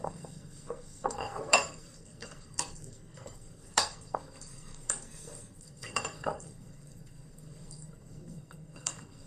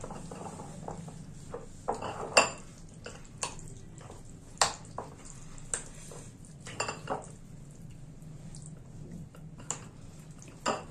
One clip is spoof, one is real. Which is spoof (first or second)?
first